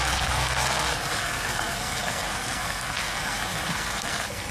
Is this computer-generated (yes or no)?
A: yes